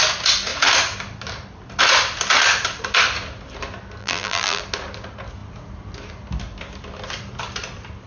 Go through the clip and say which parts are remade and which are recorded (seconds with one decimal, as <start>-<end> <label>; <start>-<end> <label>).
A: 0.0-4.0 recorded; 4.0-4.6 remade; 4.6-8.1 recorded